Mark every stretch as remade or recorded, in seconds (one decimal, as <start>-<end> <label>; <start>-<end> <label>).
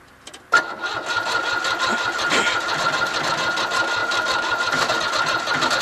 0.0-1.9 recorded; 1.9-3.2 remade; 3.2-4.0 recorded; 4.0-4.6 remade; 4.6-5.8 recorded